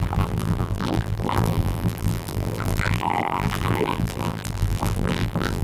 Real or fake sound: fake